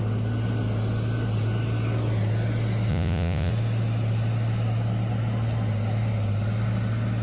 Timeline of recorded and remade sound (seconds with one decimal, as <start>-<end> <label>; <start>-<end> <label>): 0.0-2.9 recorded; 2.9-3.5 remade; 3.5-7.2 recorded